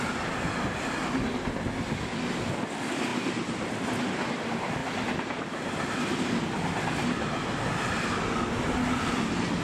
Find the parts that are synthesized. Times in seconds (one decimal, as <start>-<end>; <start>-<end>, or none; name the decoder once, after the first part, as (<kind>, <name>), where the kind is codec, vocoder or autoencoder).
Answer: none